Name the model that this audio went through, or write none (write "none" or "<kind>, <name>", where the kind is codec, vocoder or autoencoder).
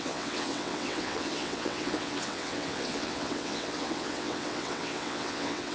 vocoder, WaveNeXt